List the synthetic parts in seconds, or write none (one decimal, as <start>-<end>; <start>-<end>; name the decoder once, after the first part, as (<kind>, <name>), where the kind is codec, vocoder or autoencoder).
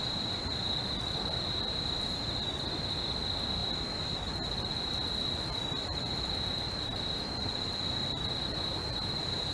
none